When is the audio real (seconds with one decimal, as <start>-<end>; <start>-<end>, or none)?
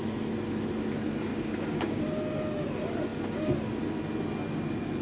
0.0-1.3; 2.0-5.0